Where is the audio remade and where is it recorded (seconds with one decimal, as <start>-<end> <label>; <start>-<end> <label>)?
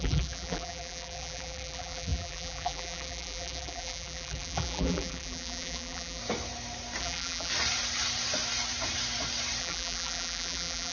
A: 0.0-6.2 remade; 6.2-7.0 recorded; 7.0-7.5 remade; 7.5-9.6 recorded; 9.6-10.9 remade